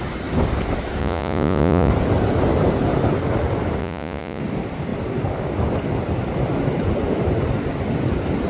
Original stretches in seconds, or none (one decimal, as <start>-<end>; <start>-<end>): 0.0-1.0; 1.9-3.8; 4.4-8.5